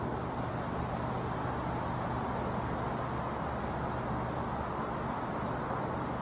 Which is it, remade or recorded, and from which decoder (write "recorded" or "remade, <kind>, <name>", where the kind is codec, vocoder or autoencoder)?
recorded